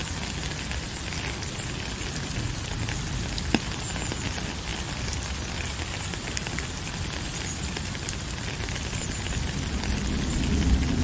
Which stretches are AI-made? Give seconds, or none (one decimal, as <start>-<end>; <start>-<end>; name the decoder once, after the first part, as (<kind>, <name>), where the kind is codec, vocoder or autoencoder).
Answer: none